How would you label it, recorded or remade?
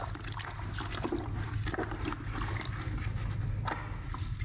recorded